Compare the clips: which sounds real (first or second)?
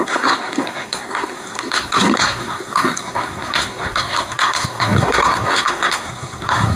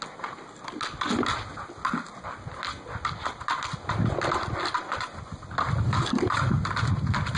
second